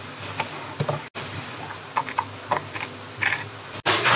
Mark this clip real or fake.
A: real